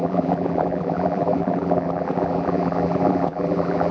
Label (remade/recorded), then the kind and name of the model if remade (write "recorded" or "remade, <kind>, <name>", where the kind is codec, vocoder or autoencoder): remade, vocoder, BigVGAN v2